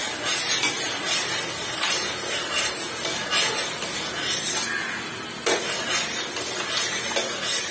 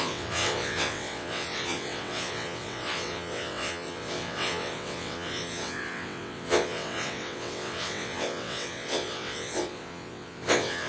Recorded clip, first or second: first